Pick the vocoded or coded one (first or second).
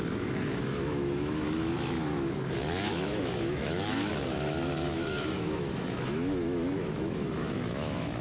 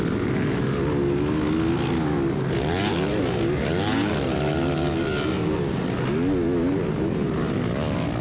first